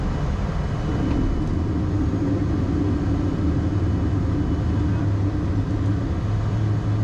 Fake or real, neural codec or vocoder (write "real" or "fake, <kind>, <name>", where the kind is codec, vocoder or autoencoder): real